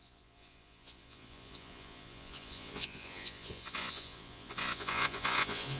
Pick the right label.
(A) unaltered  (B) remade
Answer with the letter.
B